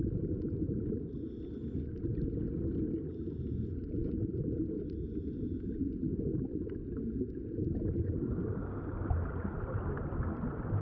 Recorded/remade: recorded